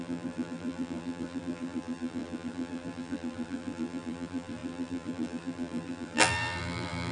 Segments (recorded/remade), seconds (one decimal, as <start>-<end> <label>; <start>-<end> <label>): 0.0-7.1 remade